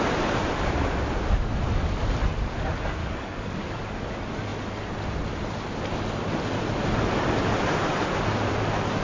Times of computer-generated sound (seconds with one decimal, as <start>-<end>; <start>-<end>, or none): 3.0-4.0